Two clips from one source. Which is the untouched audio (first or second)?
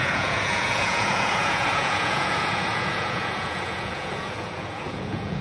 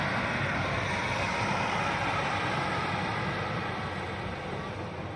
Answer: second